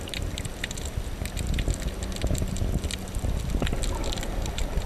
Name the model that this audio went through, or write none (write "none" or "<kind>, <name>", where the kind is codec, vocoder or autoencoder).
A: none